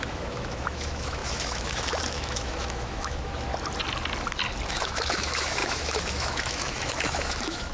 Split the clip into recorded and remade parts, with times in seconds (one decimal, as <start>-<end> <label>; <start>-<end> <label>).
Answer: 0.0-3.5 remade; 3.5-4.7 recorded; 4.7-7.7 remade